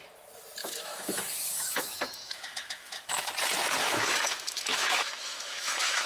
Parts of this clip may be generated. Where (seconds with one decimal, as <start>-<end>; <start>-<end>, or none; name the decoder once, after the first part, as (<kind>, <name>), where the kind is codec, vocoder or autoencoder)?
0.6-3.3 (autoencoder, DAC-VAE); 3.8-6.1